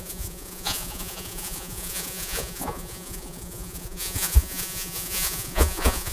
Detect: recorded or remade remade